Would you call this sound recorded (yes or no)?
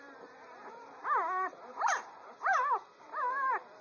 no